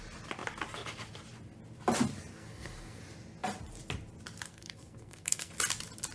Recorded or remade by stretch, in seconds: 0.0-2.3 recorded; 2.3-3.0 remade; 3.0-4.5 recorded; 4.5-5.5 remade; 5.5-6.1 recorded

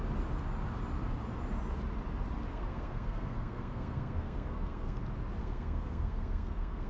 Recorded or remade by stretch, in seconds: 0.0-2.5 recorded; 2.5-5.0 remade; 5.0-5.4 recorded; 5.4-6.9 remade

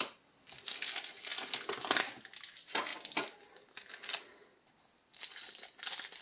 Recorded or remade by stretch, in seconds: 0.0-6.2 recorded

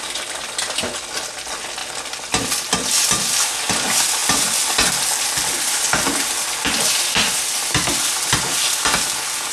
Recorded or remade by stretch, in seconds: 0.0-9.5 recorded

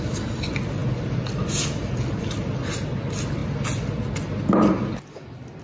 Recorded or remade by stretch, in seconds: 0.0-5.6 recorded

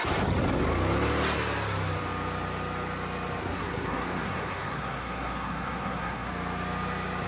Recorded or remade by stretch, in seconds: 0.0-3.5 recorded; 3.5-6.3 remade; 6.3-7.3 recorded

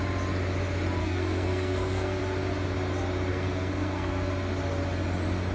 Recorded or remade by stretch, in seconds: 0.0-1.0 recorded; 1.0-2.2 remade; 2.2-3.3 recorded; 3.3-4.3 remade; 4.3-5.5 recorded

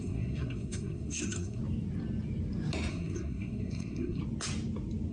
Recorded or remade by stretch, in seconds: 0.0-1.6 remade; 1.6-2.9 recorded; 2.9-4.2 remade; 4.2-5.1 recorded